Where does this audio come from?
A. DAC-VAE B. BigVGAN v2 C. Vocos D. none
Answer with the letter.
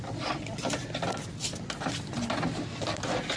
D